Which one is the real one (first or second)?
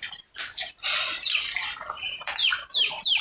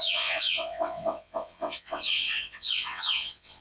first